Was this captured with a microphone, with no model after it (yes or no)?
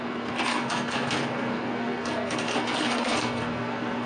no